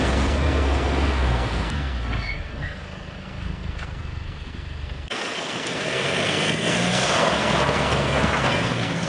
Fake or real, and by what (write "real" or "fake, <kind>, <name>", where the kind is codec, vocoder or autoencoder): fake, codec, SNAC